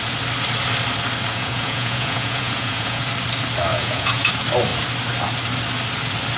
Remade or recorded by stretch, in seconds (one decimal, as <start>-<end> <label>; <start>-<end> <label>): 0.0-1.3 recorded; 1.3-3.0 remade; 3.0-3.7 recorded; 3.7-4.3 remade; 4.3-6.4 recorded